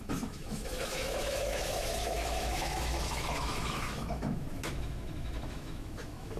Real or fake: fake